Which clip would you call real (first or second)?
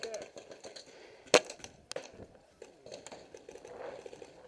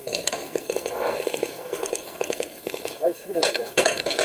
first